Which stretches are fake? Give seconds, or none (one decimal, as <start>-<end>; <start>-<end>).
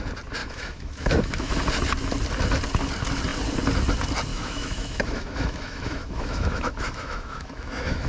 0.4-1.6; 4.3-8.1